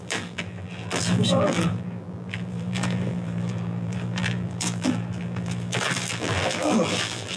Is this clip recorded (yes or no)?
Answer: no